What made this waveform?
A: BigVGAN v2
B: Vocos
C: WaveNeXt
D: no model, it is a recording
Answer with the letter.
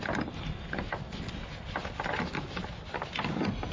D